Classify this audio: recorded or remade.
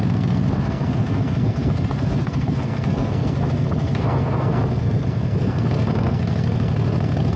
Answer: remade